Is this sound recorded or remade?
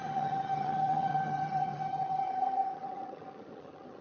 remade